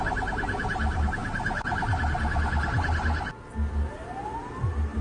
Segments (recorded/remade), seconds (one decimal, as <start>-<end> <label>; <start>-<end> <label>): 0.0-5.0 recorded